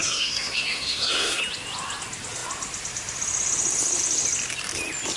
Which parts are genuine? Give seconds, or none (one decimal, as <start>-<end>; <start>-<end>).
1.4-5.2